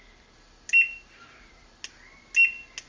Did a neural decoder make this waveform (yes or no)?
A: no